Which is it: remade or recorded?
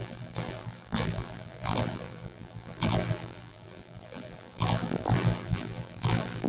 remade